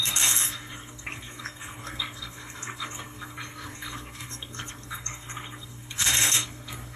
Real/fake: fake